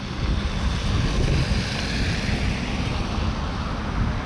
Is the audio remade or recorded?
recorded